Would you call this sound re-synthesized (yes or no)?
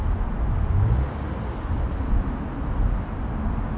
no